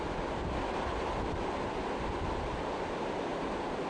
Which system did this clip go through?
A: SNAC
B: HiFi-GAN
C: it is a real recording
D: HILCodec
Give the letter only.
C